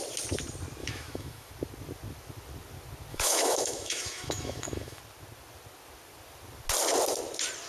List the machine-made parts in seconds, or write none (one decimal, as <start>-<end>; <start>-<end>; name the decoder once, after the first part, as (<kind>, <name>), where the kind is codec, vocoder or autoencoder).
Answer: 0.8-1.5 (autoencoder, DAC-VAE); 3.1-5.0

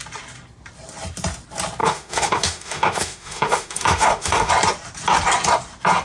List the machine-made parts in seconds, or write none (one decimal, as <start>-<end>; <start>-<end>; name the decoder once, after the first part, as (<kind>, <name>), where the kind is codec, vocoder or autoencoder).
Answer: 1.8-4.5 (autoencoder, DAC-VAE)

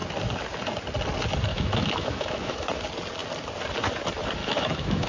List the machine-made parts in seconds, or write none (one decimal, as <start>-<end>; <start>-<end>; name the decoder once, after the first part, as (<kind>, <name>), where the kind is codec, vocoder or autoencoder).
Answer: 1.5-2.7 (autoencoder, DAC-VAE); 4.4-5.1

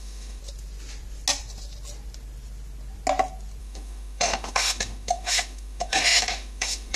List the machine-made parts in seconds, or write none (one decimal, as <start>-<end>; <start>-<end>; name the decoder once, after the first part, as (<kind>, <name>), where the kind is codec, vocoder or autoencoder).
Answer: 0.0-0.4 (autoencoder, DAC-VAE); 3.6-7.0

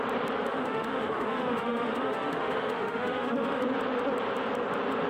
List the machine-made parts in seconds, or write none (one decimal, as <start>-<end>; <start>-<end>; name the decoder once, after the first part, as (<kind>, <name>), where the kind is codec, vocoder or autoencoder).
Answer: 0.5-3.6 (autoencoder, DAC-VAE)

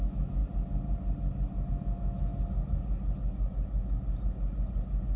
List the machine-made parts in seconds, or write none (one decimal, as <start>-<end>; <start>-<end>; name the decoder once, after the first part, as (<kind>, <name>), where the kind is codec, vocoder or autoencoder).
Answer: 0.0-0.4 (autoencoder, DAC-VAE); 1.7-2.3

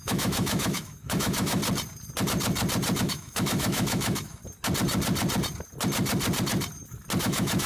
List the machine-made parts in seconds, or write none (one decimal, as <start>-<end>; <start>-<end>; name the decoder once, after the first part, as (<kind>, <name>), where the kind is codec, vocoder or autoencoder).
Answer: 0.0-1.6 (autoencoder, DAC-VAE); 3.0-4.4; 7.2-7.7